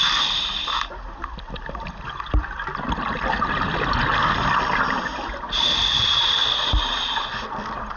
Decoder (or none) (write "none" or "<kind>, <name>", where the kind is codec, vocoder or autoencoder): vocoder, BigVGAN v2